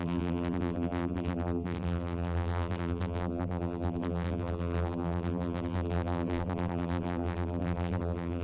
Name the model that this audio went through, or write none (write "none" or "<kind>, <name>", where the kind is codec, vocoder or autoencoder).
vocoder, BigVGAN v2